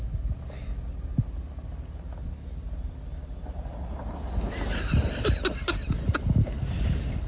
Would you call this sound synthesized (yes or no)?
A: no